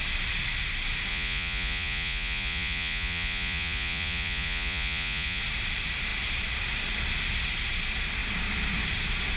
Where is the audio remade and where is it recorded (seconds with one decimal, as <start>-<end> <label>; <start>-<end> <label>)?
0.0-1.1 recorded; 1.1-5.4 remade; 5.4-9.4 recorded